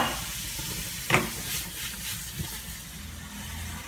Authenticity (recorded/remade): recorded